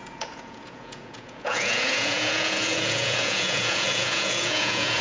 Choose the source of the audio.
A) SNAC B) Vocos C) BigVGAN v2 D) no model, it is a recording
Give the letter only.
B